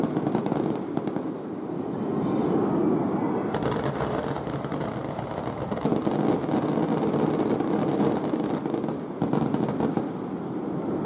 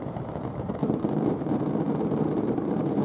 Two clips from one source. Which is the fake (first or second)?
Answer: second